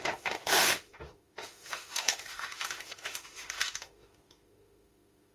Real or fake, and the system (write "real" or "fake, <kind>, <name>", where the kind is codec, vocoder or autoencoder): fake, autoencoder, DAC-VAE